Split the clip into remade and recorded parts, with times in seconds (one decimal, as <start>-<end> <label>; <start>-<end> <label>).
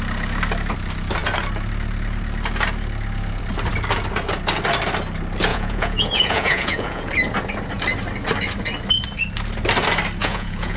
0.0-5.5 recorded; 5.5-7.1 remade; 7.1-10.2 recorded; 10.2-10.8 remade